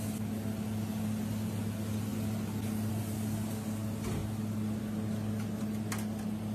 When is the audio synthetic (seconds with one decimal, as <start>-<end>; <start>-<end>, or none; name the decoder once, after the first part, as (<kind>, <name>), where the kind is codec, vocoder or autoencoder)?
none